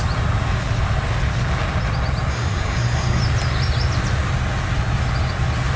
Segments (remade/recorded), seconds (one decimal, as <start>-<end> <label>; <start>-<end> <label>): 0.0-2.3 recorded; 2.3-3.2 remade; 3.2-5.8 recorded